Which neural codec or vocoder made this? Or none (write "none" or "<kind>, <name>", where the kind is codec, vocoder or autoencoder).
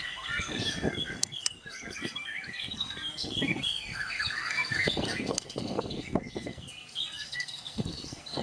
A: codec, SNAC